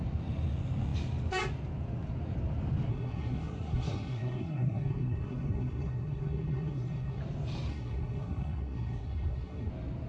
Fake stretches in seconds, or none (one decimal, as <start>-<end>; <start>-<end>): 2.9-7.2; 7.7-9.7